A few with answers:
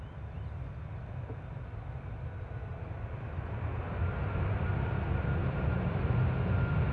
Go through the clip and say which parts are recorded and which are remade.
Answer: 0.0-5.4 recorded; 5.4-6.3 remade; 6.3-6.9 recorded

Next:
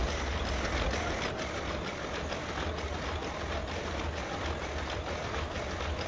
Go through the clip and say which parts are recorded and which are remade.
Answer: 0.0-6.1 recorded

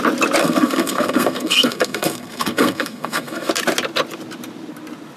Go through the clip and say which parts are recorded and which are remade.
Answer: 0.0-0.4 recorded; 0.4-3.5 remade; 3.5-5.2 recorded

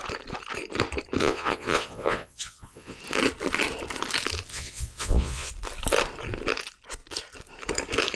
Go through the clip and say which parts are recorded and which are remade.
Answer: 0.0-1.2 recorded; 1.2-3.0 remade; 3.0-4.5 recorded; 4.5-5.5 remade; 5.5-8.2 recorded